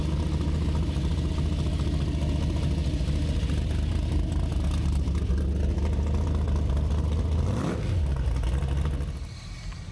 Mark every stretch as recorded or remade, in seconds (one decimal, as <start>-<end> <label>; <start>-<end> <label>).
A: 0.0-9.9 recorded